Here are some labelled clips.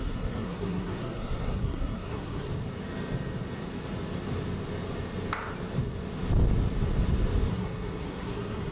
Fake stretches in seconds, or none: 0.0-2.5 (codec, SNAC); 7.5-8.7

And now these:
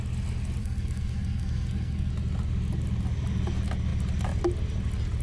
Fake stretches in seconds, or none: 0.6-2.1 (codec, SNAC)

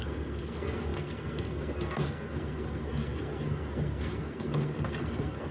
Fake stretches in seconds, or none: 0.0-5.5 (codec, SNAC)

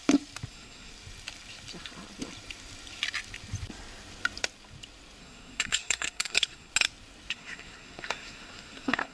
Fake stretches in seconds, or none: 0.5-0.9 (codec, SNAC); 5.2-6.7; 7.3-9.1

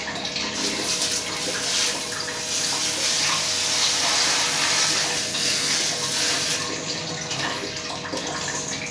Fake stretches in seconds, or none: 5.2-5.8 (codec, SNAC)

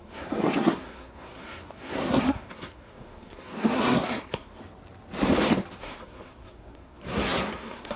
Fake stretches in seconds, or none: 0.0-4.6 (codec, SNAC); 5.8-8.0